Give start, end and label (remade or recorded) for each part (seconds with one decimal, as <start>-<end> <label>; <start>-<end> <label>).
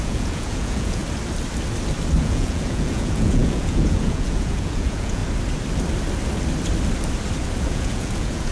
0.0-1.0 remade; 1.0-2.2 recorded; 2.2-5.2 remade; 5.2-7.6 recorded; 7.6-8.5 remade